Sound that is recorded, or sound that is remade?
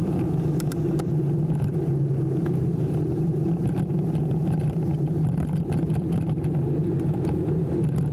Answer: recorded